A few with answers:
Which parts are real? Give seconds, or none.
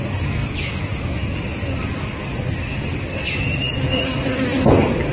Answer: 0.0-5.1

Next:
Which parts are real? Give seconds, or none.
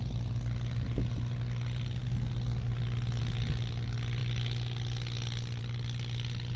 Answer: 0.0-6.6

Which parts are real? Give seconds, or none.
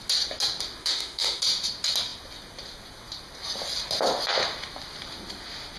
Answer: 0.0-0.8; 1.4-5.8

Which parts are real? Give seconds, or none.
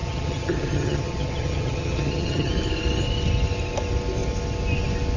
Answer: 2.5-5.2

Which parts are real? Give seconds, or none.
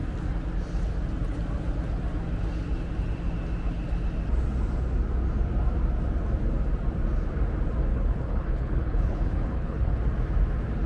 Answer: 0.0-7.9; 10.0-10.9